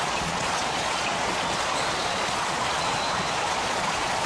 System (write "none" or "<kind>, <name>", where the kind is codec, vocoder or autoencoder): vocoder, Vocos